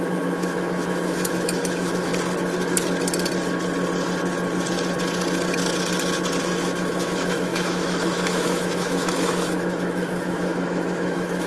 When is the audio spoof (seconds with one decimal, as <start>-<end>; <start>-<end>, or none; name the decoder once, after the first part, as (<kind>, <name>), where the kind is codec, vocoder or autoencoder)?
0.0-2.1 (autoencoder, DAC-VAE); 6.4-11.5